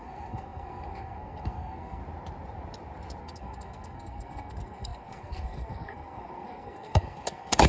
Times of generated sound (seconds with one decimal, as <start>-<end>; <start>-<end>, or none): 0.0-2.0; 3.2-7.7